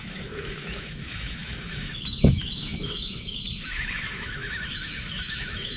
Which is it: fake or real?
fake